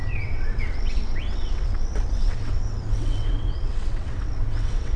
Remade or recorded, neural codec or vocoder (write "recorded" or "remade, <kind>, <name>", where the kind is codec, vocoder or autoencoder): remade, vocoder, WaveNeXt